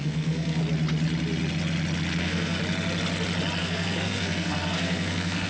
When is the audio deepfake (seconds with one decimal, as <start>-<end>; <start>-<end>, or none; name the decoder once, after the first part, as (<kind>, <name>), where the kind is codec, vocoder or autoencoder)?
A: 0.0-0.6 (codec, SNAC); 2.2-2.6; 3.6-5.5